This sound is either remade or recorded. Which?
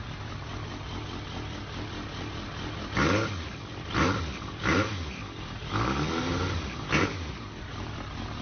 recorded